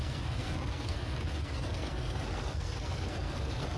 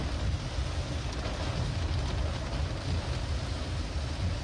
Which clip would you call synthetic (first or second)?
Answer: first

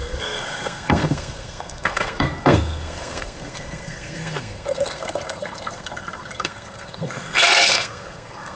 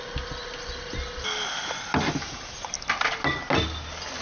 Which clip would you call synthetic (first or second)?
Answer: first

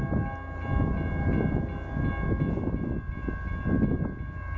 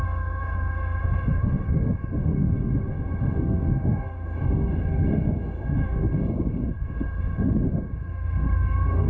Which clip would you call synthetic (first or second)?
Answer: second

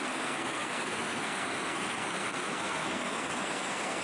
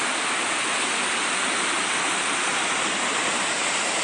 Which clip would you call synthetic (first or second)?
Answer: first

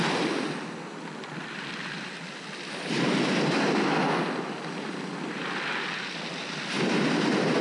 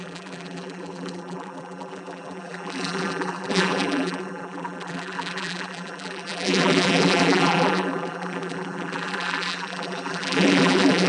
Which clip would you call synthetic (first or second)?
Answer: second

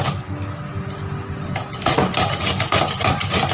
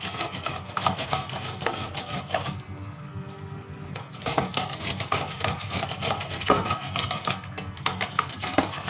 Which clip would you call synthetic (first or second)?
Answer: second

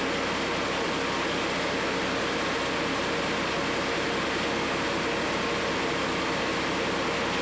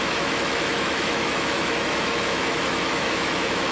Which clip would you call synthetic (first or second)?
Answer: second